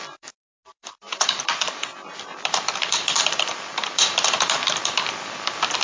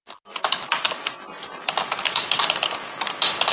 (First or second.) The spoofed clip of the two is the first